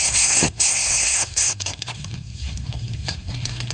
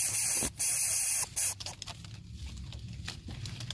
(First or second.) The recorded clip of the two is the second